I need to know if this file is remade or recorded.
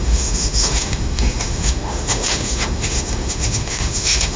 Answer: remade